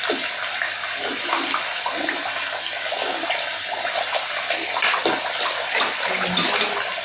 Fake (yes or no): no